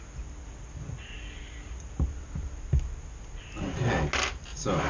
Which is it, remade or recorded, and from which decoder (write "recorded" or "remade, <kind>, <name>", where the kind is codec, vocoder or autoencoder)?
recorded